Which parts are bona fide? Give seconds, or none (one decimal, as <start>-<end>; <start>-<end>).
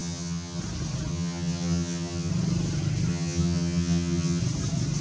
0.6-1.1; 2.3-3.1; 4.4-5.0